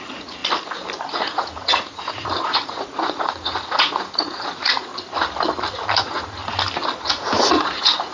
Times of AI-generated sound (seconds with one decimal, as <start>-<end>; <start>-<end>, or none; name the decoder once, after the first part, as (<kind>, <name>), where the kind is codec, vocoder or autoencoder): 0.0-0.4 (vocoder, Vocos); 1.0-4.9; 6.0-6.4; 7.0-8.1